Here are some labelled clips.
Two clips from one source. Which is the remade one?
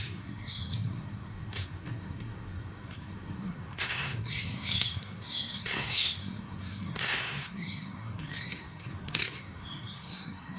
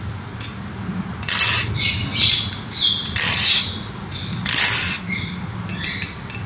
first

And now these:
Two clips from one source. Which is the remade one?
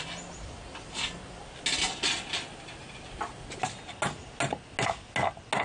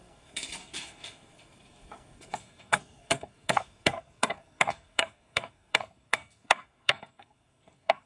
second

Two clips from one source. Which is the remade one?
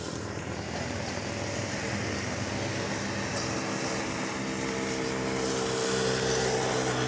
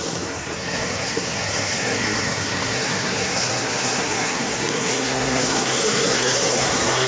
second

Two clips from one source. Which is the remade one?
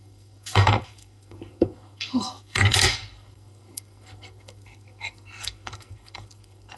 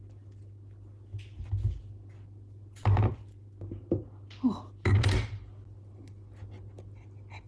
first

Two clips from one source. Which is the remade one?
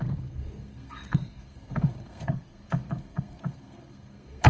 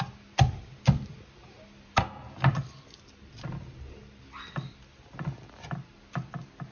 first